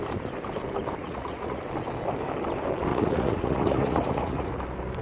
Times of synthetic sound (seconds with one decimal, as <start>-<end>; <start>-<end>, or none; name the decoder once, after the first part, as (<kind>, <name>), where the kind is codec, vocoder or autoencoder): 1.0-1.6 (vocoder, Vocos); 2.9-4.5